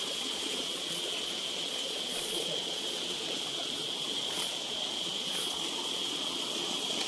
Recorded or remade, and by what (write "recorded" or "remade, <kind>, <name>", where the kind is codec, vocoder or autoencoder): remade, vocoder, Vocos